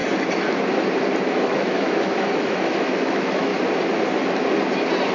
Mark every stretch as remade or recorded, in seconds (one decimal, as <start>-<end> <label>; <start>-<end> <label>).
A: 0.0-1.2 recorded; 1.2-3.5 remade; 3.5-5.1 recorded